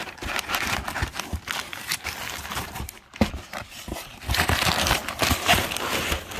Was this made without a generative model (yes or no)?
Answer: yes